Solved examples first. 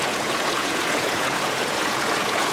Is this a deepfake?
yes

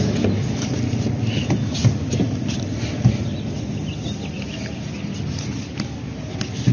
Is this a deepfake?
no